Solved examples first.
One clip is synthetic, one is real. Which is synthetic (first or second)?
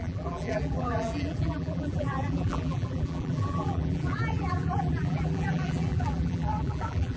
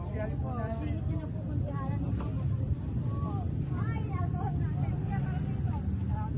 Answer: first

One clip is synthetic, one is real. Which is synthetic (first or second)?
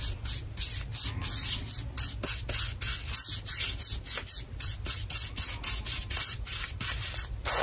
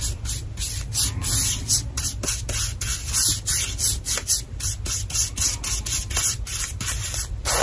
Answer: second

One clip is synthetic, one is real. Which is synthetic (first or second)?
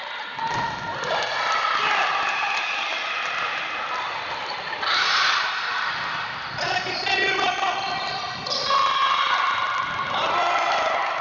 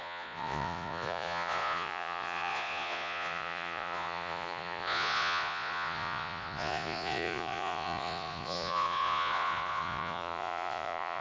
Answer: second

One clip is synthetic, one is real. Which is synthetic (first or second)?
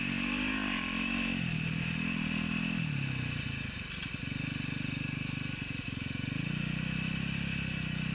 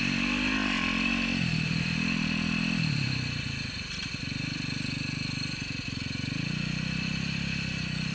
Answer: second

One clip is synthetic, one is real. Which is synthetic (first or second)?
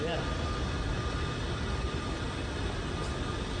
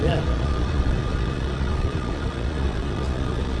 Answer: second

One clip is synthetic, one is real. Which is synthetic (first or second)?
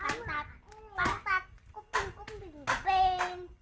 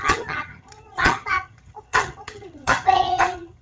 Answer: second